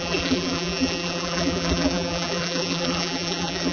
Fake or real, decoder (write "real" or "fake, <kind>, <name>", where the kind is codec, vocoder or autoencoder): fake, vocoder, BigVGAN v2